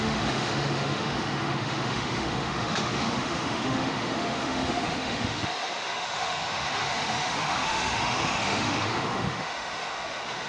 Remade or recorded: remade